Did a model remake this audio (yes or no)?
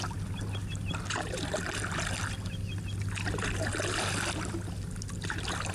no